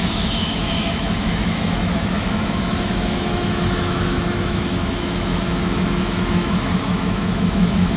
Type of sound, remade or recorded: remade